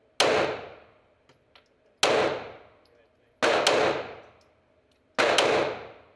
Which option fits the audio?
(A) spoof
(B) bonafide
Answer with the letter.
B